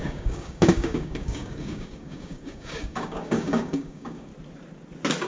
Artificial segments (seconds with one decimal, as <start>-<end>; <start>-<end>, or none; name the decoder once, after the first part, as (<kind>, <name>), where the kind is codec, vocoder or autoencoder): 0.0-4.3 (codec, DAC)